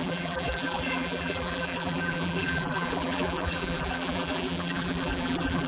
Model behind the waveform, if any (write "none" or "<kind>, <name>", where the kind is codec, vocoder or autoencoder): vocoder, BigVGAN v2